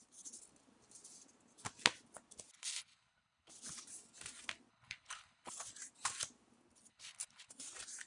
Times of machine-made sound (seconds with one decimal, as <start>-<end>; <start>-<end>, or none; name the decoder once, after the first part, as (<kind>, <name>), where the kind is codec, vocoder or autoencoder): 2.5-3.5 (codec, HILCodec); 4.7-5.5; 6.9-7.5